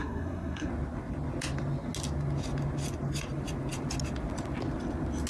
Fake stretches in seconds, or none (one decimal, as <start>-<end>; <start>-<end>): 0.0-0.7